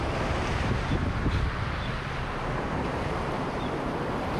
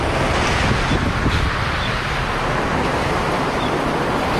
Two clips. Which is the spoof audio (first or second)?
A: first